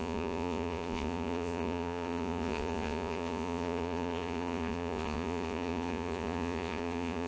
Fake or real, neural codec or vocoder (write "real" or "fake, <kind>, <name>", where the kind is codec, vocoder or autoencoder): fake, vocoder, Vocos